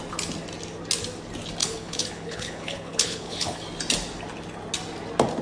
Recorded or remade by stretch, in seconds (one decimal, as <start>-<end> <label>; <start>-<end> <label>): 0.0-1.6 recorded; 1.6-3.6 remade; 3.6-5.4 recorded